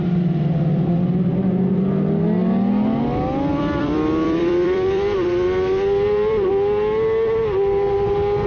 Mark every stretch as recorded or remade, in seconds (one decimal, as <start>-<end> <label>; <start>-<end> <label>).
0.0-3.5 recorded; 3.5-6.5 remade; 6.5-8.5 recorded